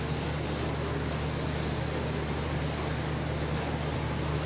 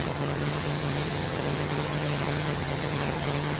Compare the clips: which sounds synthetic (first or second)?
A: second